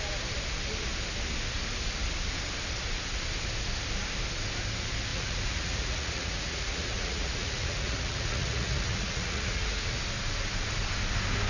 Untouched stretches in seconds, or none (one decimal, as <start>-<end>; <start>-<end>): 0.0-5.1; 10.0-11.5